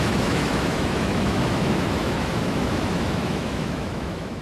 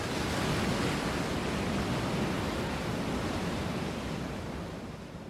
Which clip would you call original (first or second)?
second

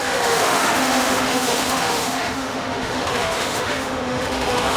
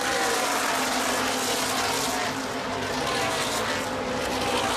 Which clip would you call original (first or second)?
second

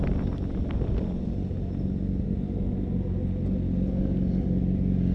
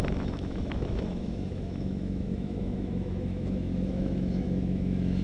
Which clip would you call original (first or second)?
first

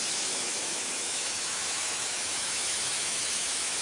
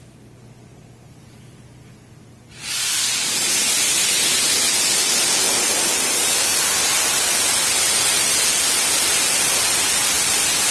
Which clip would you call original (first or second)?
second